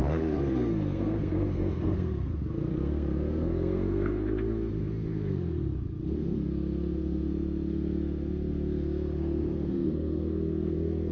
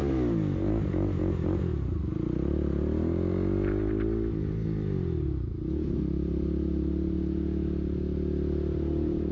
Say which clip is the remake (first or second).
first